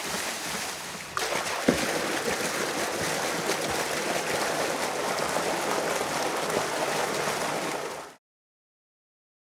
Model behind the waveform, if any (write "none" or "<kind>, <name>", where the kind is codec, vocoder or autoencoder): none